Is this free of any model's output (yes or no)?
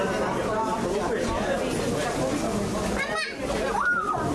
yes